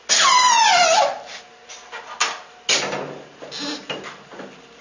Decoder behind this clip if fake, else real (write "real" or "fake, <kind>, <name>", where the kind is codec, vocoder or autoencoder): real